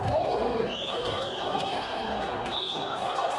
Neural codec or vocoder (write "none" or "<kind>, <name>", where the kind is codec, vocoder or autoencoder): codec, SNAC